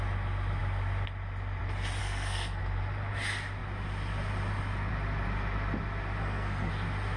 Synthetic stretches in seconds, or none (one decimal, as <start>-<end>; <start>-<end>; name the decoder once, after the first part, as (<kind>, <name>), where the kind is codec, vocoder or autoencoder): 2.0-2.6 (codec, SNAC); 6.2-6.7